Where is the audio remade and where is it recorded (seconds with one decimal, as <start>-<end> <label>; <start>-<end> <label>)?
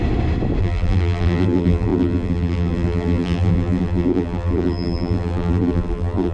0.0-0.6 recorded; 0.6-6.3 remade